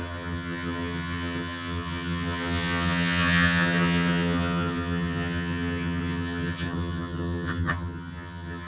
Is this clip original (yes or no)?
no